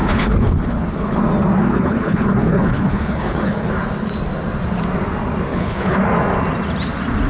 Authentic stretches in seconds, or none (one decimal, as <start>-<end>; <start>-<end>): 1.2-1.7; 3.7-5.5; 6.0-7.3